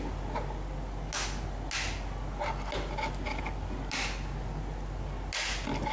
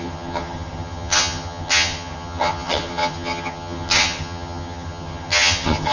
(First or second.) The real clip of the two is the first